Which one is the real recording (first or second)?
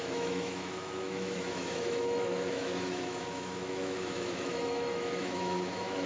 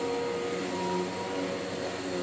second